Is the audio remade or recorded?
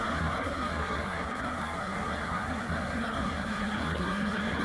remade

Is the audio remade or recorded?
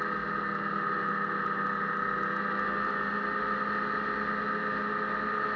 recorded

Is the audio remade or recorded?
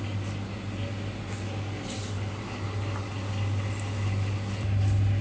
recorded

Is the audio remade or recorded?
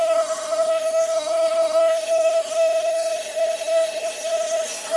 remade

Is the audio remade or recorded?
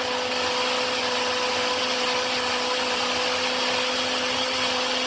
recorded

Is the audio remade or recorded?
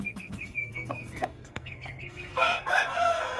remade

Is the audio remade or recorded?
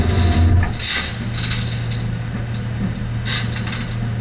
recorded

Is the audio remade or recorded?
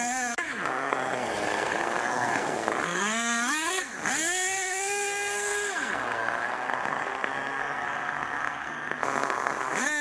remade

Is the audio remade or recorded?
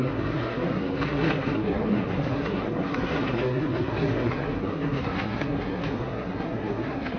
remade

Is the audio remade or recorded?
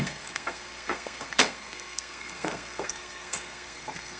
remade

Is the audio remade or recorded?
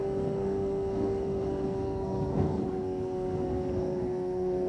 remade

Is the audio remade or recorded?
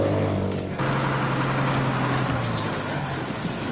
recorded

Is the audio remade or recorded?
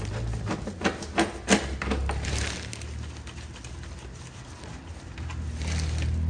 recorded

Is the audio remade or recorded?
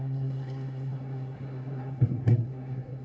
remade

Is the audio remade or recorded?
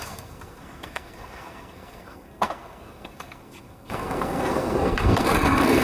remade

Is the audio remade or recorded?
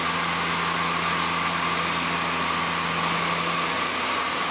recorded